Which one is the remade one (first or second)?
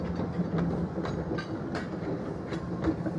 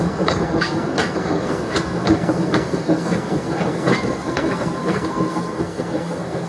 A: second